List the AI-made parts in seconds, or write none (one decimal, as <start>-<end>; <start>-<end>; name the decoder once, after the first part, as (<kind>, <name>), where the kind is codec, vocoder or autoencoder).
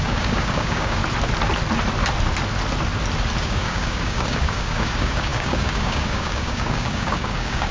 0.0-1.0 (codec, DAC); 3.4-7.7